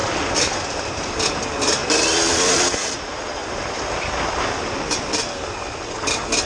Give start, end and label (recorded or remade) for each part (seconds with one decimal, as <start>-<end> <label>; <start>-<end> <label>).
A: 0.0-1.2 remade; 1.2-1.8 recorded; 1.8-5.5 remade; 5.5-6.5 recorded